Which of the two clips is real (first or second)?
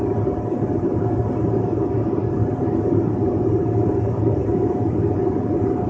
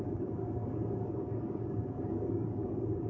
first